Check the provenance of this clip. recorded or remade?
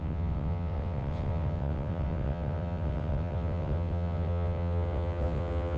remade